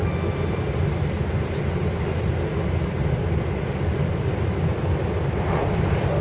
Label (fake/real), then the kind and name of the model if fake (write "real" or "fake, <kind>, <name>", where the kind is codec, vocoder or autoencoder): real